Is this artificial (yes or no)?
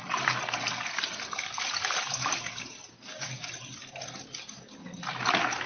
no